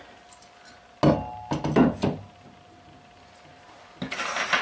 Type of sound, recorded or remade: recorded